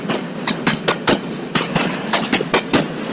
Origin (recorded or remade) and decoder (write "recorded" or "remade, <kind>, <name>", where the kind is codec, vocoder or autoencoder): recorded